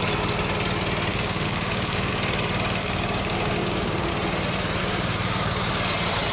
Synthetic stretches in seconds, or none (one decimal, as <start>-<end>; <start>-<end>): 1.1-2.1; 2.8-4.1; 4.8-5.7